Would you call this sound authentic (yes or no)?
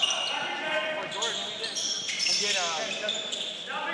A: yes